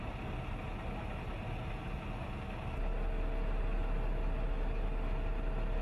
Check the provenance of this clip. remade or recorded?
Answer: recorded